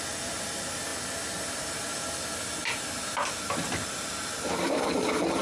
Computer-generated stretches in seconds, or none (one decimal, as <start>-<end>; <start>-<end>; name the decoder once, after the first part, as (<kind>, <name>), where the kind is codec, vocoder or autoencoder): none

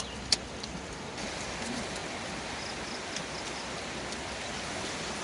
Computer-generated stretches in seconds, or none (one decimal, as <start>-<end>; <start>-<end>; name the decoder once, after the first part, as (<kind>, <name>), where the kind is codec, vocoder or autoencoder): none

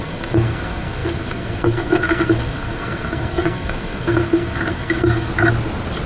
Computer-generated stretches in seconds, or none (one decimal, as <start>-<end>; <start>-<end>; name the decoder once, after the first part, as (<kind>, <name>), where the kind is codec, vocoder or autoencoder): 0.0-5.3 (codec, SNAC)

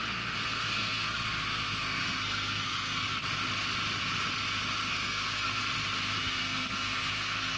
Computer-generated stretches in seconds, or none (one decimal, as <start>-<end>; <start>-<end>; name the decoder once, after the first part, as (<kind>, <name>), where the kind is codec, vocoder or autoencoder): 0.0-3.2 (codec, SNAC); 4.9-5.6; 6.2-7.6